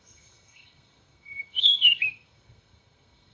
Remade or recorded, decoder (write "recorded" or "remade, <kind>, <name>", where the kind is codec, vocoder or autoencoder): remade, codec, SNAC